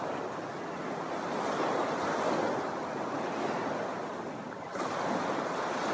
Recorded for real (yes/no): yes